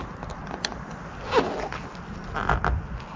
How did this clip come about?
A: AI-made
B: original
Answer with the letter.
B